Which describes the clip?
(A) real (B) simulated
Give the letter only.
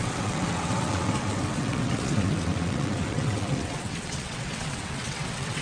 B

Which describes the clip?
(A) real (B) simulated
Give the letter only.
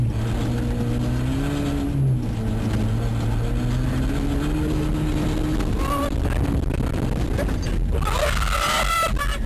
A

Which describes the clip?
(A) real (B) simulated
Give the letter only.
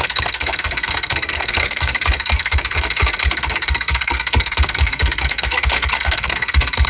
B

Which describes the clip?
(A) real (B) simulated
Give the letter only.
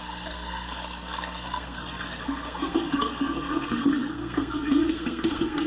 B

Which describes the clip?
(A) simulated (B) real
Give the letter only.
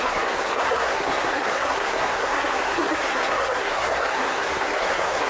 A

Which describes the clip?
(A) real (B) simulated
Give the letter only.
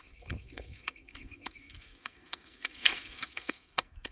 B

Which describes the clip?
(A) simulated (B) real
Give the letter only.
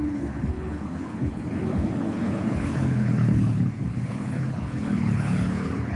A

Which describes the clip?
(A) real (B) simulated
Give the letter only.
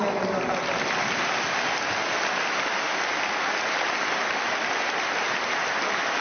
A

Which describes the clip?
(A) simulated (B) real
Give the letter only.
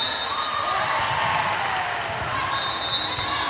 B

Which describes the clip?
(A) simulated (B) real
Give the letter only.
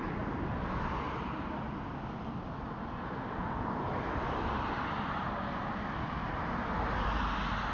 B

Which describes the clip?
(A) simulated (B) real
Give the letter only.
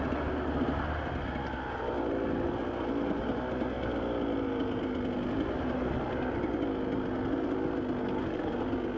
B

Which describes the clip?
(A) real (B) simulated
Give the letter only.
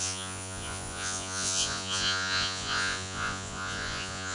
B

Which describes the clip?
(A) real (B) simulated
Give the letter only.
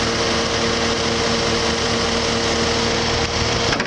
A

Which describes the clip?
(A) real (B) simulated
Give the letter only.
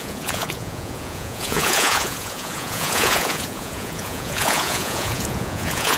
B